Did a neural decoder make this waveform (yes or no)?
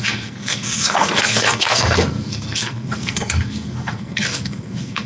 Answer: yes